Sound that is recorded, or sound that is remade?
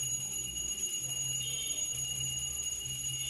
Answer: recorded